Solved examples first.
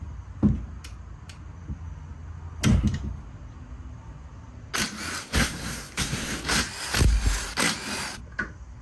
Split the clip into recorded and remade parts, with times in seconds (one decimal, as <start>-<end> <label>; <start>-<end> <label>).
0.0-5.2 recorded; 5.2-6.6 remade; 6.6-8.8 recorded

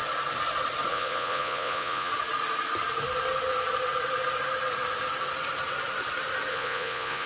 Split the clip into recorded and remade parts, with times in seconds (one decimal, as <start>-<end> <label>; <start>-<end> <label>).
0.0-0.9 recorded; 0.9-2.1 remade; 2.1-6.5 recorded; 6.5-7.3 remade

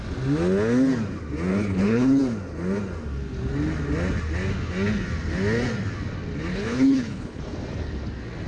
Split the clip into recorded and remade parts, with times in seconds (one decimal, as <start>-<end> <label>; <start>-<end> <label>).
0.0-1.5 recorded; 1.5-2.2 remade; 2.2-6.5 recorded; 6.5-7.4 remade; 7.4-8.5 recorded

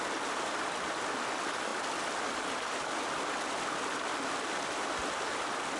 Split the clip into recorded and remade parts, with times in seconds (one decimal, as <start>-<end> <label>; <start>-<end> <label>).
0.0-5.8 recorded

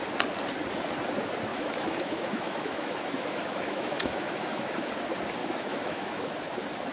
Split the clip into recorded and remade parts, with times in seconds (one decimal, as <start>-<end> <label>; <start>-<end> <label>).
0.0-1.5 recorded; 1.5-4.9 remade; 4.9-5.4 recorded; 5.4-6.4 remade; 6.4-6.9 recorded